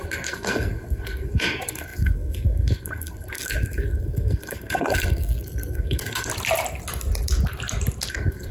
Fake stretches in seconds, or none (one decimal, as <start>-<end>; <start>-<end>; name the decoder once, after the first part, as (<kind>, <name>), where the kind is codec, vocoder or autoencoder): 0.0-6.3 (codec, SNAC); 8.1-8.5